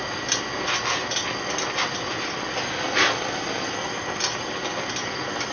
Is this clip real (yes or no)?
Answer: yes